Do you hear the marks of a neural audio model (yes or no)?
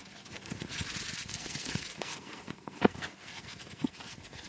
yes